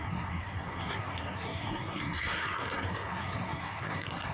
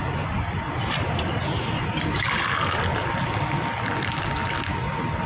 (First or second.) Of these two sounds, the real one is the second